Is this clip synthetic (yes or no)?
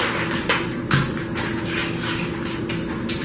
no